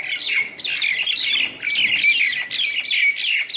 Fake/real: real